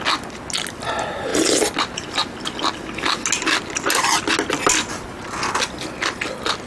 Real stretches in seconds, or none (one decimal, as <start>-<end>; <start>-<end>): 0.0-6.7